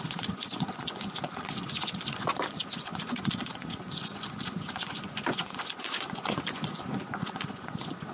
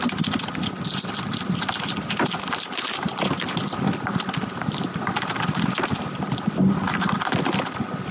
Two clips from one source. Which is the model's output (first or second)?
first